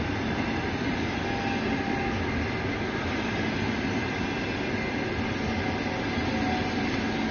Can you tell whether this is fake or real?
real